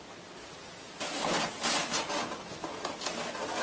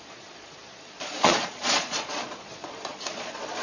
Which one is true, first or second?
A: first